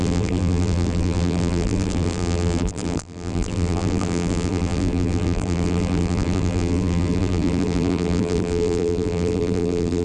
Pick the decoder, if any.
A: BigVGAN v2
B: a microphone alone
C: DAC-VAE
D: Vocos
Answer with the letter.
A